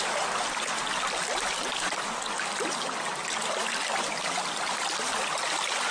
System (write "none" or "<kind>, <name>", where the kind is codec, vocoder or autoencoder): none